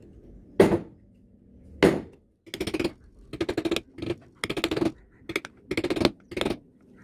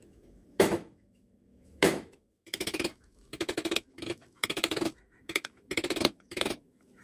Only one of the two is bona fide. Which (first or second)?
first